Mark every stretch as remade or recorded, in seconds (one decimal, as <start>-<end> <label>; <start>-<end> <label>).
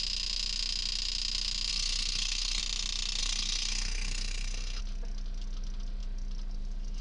0.0-1.7 recorded; 1.7-2.6 remade; 2.6-3.2 recorded; 3.2-4.8 remade; 4.8-7.0 recorded